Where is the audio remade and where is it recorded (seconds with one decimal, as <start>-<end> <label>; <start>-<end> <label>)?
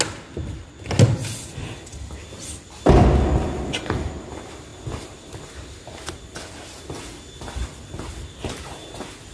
0.0-9.3 recorded